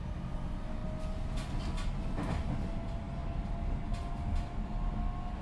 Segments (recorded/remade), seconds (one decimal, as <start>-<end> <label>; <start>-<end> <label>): 0.0-5.4 recorded